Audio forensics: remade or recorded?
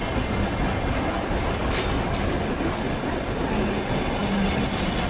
recorded